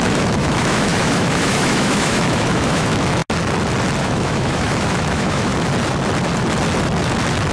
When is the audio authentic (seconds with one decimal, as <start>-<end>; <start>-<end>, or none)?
3.2-4.0; 5.5-7.5